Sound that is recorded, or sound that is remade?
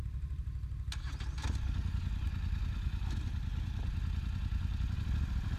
recorded